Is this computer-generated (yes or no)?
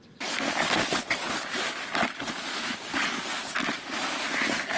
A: no